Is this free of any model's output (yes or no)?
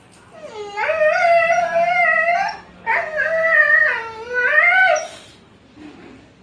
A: yes